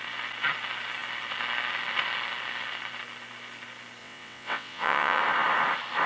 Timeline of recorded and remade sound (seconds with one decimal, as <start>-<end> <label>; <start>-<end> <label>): 0.0-4.0 recorded; 4.0-5.2 remade; 5.2-6.1 recorded